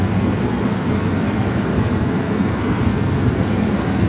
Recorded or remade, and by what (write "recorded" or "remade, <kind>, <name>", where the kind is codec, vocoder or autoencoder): remade, codec, SNAC